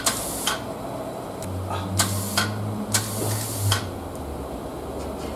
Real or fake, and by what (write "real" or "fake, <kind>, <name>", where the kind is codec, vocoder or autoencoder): real